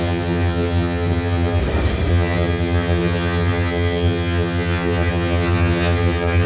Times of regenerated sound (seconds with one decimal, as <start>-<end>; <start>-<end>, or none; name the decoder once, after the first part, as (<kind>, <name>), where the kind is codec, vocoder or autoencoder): 0.0-1.6 (vocoder, HiFi-GAN); 2.1-6.5